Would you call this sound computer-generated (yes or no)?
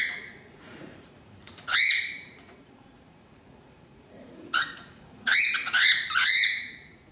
yes